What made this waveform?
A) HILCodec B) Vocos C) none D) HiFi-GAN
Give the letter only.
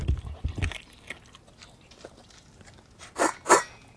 C